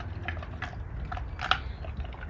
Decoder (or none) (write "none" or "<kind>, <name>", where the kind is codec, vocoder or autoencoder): none